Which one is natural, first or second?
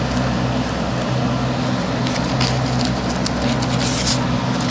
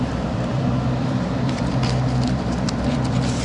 first